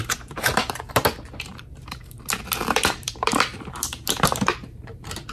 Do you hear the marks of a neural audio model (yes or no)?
yes